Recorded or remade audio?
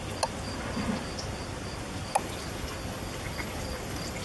recorded